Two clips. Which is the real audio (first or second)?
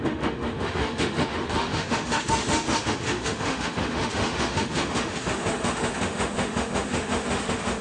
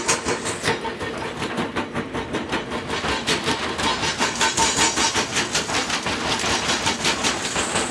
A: second